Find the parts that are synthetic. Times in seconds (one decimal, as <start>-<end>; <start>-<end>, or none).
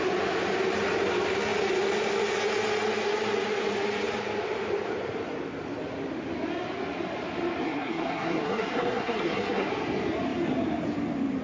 7.6-9.7